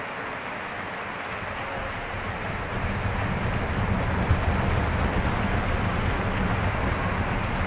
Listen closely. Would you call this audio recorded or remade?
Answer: recorded